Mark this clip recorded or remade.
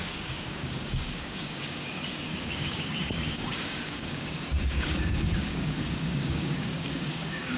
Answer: remade